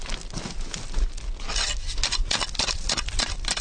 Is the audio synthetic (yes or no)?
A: no